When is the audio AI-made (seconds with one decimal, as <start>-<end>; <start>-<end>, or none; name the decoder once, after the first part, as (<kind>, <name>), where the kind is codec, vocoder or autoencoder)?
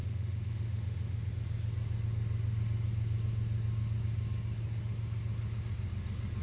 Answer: 0.0-1.3 (autoencoder, DAC-VAE)